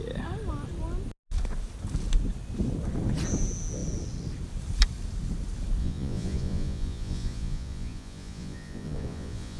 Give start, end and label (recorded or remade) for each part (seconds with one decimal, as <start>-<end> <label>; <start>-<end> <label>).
0.0-5.8 recorded; 5.8-9.6 remade